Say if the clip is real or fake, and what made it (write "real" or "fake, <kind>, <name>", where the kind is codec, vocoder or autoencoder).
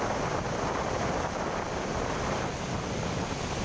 real